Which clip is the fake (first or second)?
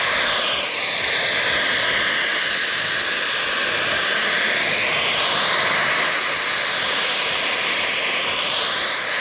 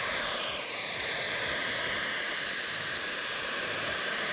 second